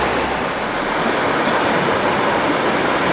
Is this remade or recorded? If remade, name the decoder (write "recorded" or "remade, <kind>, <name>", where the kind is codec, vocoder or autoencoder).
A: recorded